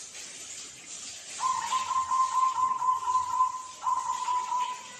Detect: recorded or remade recorded